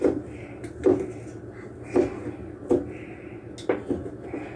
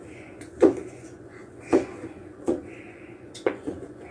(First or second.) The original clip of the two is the first